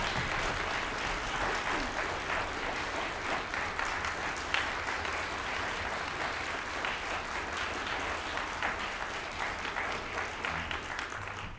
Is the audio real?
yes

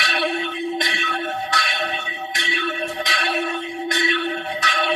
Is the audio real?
no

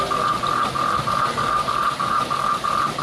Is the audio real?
yes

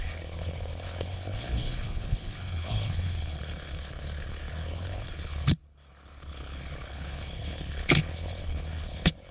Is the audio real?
no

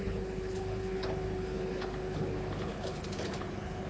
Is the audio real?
no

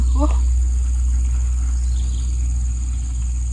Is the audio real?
yes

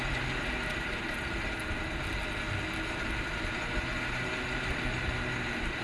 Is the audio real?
yes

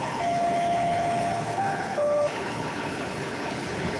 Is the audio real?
no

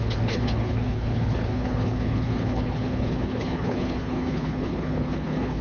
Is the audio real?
no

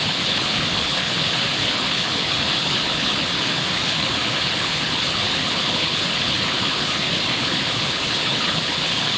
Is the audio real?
no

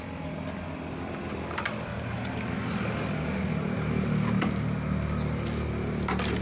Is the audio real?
yes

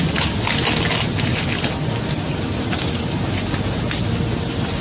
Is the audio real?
yes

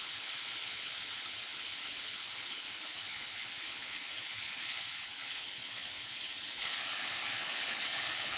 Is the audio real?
no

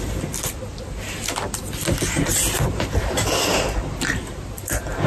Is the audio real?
yes